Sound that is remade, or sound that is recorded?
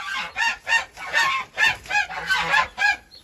recorded